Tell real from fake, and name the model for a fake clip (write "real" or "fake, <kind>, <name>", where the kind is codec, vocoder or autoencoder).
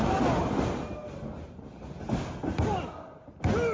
real